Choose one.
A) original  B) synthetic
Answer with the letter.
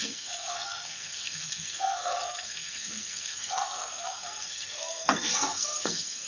B